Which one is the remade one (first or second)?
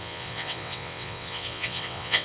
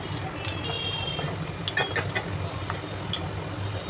first